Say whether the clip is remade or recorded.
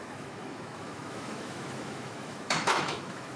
remade